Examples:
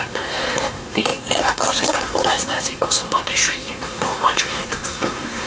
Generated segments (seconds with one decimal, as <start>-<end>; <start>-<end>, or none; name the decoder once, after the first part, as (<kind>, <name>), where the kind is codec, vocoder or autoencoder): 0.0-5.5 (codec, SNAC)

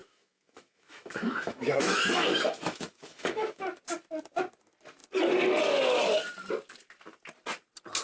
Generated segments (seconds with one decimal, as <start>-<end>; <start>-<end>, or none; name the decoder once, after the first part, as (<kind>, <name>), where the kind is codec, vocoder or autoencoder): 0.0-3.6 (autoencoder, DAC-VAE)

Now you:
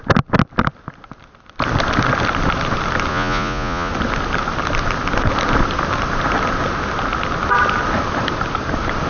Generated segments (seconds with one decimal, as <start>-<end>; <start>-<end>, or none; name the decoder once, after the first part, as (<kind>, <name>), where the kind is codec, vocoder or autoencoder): 3.1-3.9 (vocoder, Vocos)

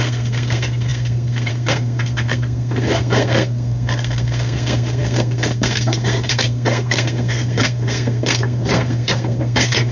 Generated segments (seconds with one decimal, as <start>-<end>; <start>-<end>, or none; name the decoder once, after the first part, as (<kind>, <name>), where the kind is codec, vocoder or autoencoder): 0.0-9.9 (codec, SNAC)

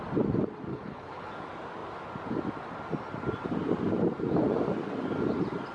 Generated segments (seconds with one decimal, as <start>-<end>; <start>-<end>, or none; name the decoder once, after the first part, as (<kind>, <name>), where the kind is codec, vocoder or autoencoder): 0.7-1.3 (codec, HILCodec)

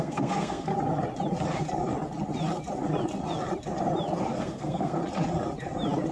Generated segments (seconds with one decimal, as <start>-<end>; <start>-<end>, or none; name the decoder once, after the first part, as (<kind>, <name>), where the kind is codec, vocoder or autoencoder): 0.0-0.7 (codec, SNAC); 4.4-5.0